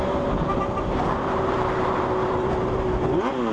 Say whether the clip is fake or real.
fake